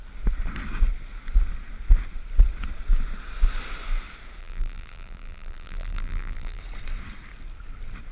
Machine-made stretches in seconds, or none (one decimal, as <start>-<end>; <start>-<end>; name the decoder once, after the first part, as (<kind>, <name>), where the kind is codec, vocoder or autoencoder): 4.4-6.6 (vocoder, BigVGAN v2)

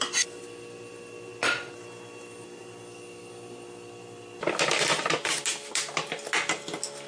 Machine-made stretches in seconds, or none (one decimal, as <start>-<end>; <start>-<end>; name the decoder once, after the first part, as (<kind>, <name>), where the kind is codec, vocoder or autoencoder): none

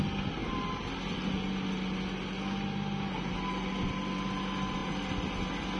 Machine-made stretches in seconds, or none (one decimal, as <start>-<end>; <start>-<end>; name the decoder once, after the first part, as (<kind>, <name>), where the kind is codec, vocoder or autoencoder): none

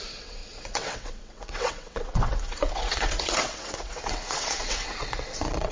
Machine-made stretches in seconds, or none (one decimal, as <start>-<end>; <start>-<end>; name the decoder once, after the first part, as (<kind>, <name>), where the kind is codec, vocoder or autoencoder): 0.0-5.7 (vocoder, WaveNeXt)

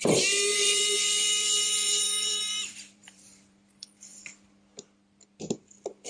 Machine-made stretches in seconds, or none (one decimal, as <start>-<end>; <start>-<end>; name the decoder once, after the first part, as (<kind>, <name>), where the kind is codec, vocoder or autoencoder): 0.5-4.2 (vocoder, BigVGAN v2)

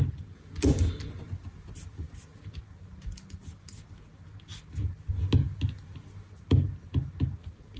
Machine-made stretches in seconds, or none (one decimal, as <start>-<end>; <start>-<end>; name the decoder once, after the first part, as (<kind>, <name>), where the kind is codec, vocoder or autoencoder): none

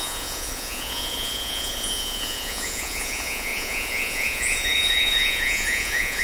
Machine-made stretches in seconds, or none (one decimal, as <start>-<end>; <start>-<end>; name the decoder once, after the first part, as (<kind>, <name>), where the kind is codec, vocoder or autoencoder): 0.0-6.2 (vocoder, Vocos)